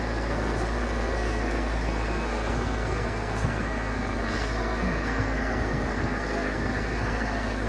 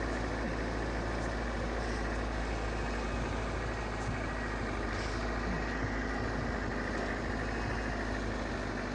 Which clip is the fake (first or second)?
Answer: first